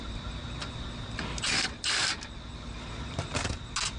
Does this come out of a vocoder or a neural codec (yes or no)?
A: no